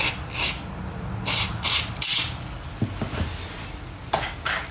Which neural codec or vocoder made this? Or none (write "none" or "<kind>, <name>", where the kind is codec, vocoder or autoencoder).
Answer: none